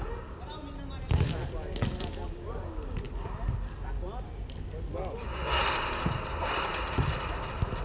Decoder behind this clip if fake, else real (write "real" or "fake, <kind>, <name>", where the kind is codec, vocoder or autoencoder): real